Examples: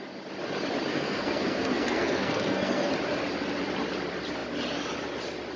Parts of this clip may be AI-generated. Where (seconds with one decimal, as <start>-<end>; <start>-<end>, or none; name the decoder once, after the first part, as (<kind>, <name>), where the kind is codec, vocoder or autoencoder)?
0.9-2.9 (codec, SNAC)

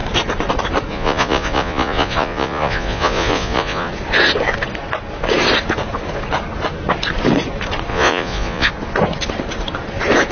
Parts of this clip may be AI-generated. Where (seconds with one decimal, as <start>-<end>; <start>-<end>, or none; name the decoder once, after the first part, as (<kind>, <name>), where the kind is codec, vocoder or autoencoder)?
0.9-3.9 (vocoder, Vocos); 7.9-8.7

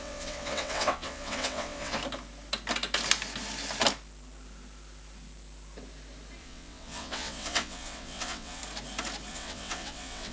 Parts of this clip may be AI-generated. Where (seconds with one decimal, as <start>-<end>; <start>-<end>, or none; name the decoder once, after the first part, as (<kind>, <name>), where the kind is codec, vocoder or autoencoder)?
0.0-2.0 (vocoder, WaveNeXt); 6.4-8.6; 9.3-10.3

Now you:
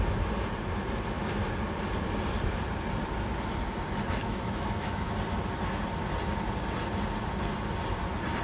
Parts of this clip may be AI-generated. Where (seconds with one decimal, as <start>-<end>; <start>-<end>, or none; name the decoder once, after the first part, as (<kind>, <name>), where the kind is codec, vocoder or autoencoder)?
4.2-5.1 (autoencoder, DAC-VAE)

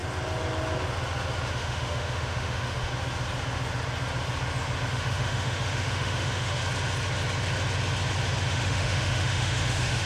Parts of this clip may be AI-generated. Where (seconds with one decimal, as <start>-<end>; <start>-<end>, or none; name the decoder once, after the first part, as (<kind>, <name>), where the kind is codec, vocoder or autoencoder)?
1.5-2.9 (autoencoder, DAC-VAE); 4.9-6.6; 8.5-10.1

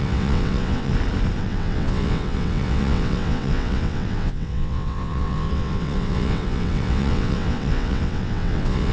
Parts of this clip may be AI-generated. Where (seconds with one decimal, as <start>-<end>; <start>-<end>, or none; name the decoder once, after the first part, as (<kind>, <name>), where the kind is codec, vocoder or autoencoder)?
0.0-0.9 (vocoder, WaveNeXt); 1.4-8.9

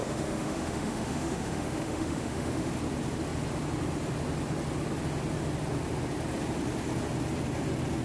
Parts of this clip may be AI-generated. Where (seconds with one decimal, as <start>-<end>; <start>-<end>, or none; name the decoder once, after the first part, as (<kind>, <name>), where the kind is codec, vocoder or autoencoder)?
0.0-2.7 (autoencoder, DAC-VAE)

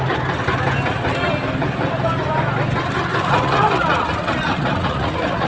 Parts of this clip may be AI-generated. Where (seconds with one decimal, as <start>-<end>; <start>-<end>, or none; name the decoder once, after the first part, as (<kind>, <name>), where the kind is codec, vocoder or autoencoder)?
3.1-5.5 (vocoder, Vocos)